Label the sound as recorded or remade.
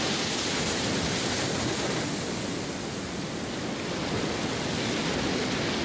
recorded